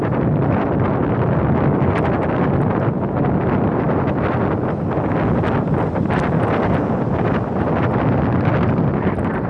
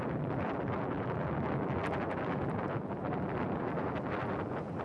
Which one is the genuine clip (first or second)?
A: first